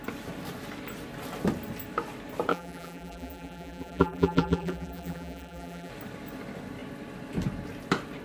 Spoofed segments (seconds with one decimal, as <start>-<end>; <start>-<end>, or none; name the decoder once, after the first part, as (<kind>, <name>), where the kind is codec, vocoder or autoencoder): 2.5-5.9 (vocoder, BigVGAN v2)